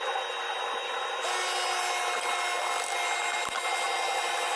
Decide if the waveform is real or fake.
real